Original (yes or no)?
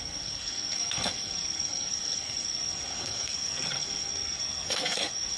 no